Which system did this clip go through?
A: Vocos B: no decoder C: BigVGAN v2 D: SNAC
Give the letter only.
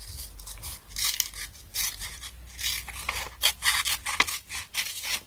B